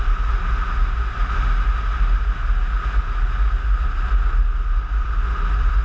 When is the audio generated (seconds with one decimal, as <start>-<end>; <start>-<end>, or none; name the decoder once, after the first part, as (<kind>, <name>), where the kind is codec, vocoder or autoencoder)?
none